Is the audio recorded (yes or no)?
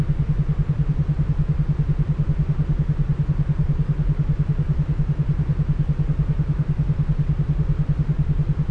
yes